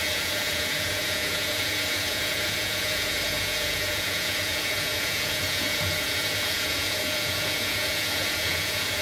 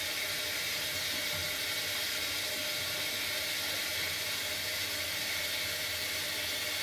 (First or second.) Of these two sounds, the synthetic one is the first